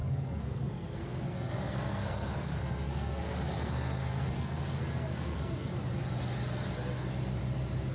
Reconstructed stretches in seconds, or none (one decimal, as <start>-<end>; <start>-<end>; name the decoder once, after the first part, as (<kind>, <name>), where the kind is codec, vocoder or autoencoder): 0.0-5.7 (codec, SNAC)